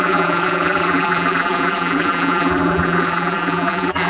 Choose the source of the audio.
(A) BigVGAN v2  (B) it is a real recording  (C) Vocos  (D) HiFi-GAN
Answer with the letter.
A